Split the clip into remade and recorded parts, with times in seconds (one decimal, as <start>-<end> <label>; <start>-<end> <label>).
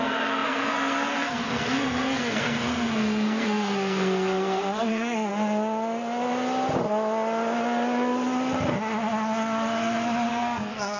0.0-5.3 remade; 5.3-10.3 recorded; 10.3-11.0 remade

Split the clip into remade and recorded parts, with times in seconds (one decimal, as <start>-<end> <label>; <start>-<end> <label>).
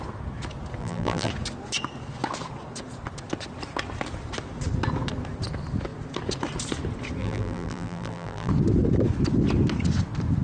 0.0-0.8 recorded; 0.8-1.3 remade; 1.3-7.2 recorded; 7.2-8.5 remade; 8.5-10.4 recorded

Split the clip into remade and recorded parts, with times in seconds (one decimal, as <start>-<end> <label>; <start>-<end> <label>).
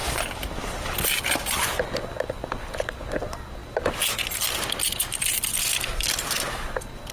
0.0-7.1 recorded